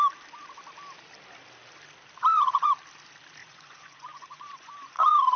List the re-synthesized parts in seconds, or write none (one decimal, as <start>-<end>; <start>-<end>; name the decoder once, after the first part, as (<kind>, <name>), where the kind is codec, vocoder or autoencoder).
2.2-2.7 (vocoder, Vocos); 3.4-5.4